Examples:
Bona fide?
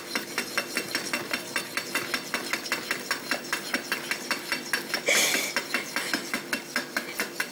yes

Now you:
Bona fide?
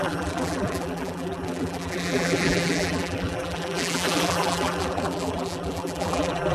no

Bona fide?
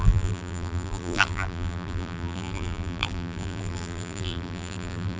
no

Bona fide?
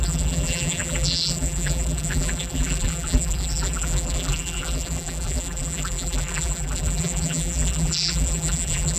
no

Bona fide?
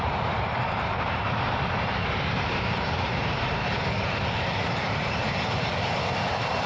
no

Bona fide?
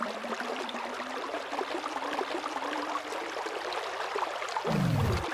yes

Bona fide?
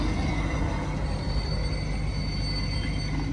yes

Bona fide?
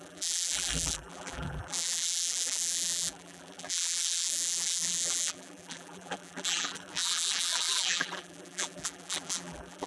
no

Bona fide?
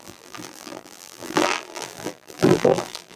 no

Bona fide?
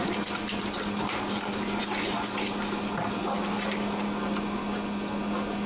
yes